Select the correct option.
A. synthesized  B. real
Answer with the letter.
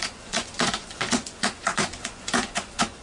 A